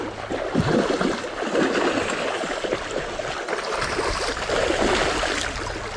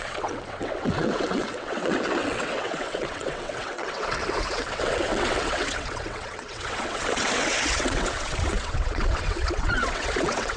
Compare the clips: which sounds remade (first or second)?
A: second